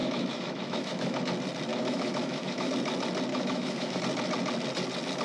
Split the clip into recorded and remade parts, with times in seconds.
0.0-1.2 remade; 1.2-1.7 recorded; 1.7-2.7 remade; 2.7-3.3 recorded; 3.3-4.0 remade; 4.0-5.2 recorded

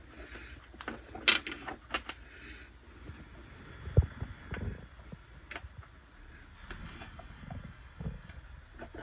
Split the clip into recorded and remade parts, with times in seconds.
0.0-6.8 recorded; 6.8-8.4 remade; 8.4-9.0 recorded

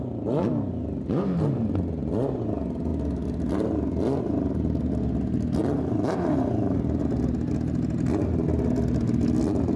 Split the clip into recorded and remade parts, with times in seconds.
0.0-5.6 recorded; 5.6-7.0 remade; 7.0-9.8 recorded

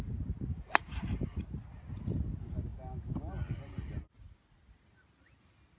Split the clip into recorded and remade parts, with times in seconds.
0.0-5.8 recorded

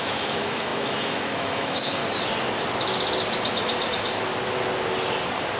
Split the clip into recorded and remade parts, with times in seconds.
0.0-2.0 remade; 2.0-5.6 recorded

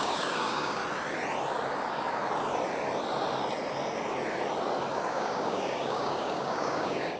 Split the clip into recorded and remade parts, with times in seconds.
0.0-0.8 remade; 0.8-5.1 recorded; 5.1-7.2 remade

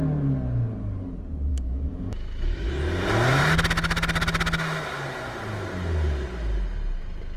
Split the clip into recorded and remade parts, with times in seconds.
0.0-1.5 recorded; 1.5-2.7 remade; 2.7-7.4 recorded